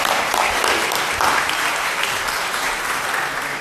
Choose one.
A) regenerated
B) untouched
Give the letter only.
A